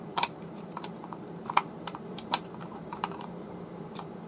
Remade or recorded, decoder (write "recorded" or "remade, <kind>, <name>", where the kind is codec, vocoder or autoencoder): remade, vocoder, BigVGAN v2